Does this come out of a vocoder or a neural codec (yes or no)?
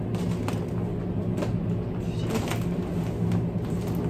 no